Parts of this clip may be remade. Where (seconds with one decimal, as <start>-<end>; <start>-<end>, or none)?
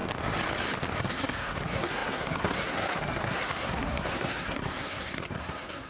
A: 1.0-5.9